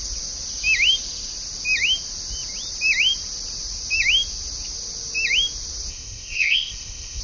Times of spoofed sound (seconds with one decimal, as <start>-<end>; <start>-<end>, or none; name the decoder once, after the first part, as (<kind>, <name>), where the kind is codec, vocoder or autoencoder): 5.9-7.2 (codec, ZipCodec)